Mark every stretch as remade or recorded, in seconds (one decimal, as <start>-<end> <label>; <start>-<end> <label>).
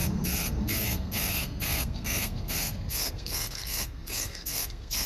0.0-5.1 remade